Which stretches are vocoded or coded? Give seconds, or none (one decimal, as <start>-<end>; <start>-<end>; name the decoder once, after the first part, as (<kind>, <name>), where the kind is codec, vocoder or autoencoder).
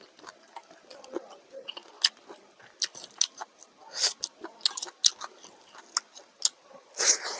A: none